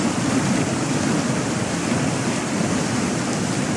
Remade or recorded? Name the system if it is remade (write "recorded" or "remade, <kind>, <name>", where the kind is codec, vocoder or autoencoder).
recorded